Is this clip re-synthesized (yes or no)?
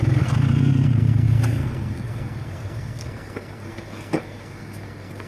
yes